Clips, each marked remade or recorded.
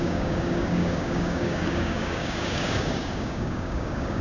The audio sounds remade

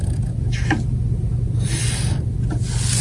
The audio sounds recorded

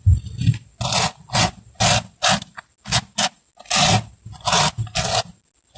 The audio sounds recorded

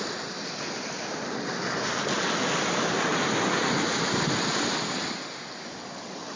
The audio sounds recorded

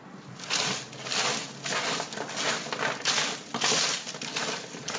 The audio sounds recorded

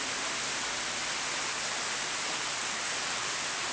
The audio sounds recorded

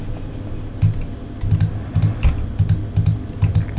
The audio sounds recorded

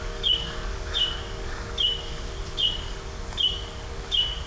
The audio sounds remade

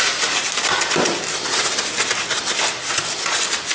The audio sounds recorded